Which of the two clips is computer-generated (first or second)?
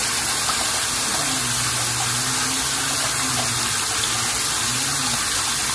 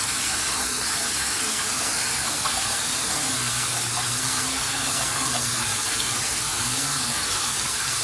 second